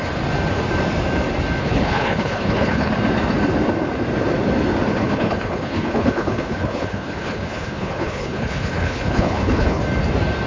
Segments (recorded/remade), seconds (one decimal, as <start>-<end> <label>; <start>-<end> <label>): 0.0-1.6 recorded; 1.6-2.9 remade; 2.9-5.0 recorded; 5.0-9.8 remade; 9.8-10.5 recorded